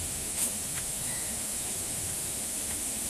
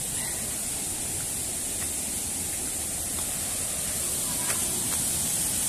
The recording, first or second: second